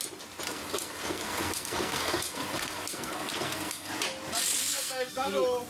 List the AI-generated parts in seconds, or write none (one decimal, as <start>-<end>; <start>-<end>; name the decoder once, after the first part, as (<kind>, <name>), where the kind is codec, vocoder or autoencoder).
0.5-3.9 (codec, SNAC); 4.6-5.3